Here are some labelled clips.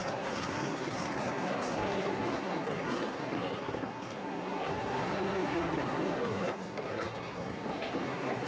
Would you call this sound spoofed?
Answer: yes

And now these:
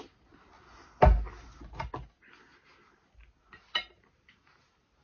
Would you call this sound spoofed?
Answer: no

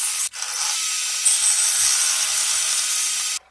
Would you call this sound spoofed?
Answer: no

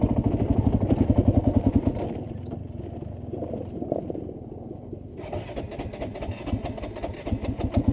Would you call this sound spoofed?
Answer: no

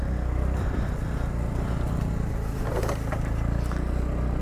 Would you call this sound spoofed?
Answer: no